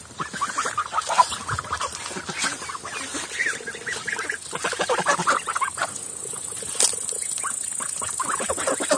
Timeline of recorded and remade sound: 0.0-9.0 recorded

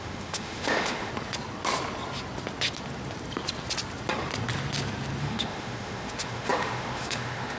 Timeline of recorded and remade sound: 0.0-1.1 remade; 1.1-5.2 recorded; 5.2-7.6 remade

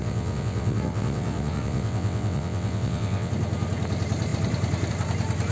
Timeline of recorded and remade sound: 0.0-3.3 remade; 3.3-5.5 recorded